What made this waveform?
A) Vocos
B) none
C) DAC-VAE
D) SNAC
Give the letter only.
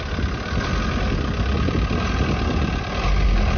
B